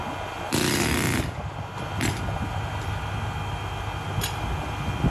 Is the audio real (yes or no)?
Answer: yes